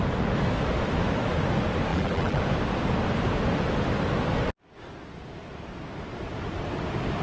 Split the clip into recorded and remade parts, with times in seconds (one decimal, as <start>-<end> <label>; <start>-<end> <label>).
0.0-1.9 recorded; 1.9-2.4 remade; 2.4-7.2 recorded